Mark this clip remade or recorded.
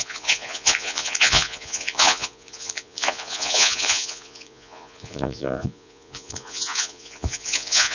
remade